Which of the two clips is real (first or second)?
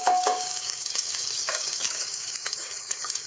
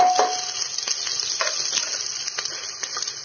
second